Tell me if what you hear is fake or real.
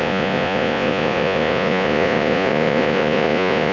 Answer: fake